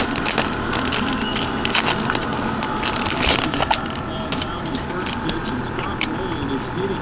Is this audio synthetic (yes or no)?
no